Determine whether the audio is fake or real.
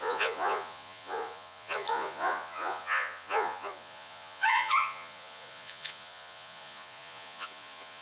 fake